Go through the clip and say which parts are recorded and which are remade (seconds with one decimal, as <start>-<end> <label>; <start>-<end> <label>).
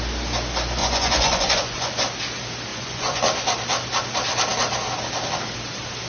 0.0-0.8 recorded; 0.8-1.9 remade; 1.9-2.7 recorded; 2.7-3.2 remade; 3.2-6.1 recorded